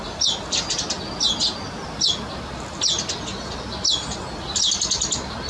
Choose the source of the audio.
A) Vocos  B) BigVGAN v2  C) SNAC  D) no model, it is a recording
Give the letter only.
D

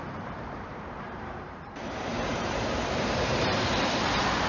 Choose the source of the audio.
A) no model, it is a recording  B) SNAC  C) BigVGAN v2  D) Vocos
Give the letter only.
C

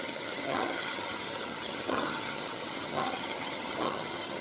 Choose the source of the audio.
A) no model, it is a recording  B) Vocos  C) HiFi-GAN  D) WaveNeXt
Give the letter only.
C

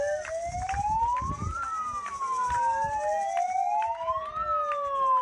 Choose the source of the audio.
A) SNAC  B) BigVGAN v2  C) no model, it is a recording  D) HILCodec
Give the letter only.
C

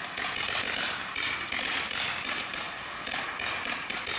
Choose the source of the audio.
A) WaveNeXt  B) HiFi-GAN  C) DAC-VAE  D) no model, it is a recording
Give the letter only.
D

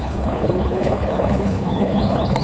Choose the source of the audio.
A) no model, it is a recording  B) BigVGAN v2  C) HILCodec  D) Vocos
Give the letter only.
C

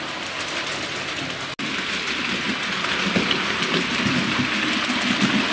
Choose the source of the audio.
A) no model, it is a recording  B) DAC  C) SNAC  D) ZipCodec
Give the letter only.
A